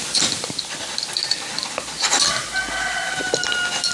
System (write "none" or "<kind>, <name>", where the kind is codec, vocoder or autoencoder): none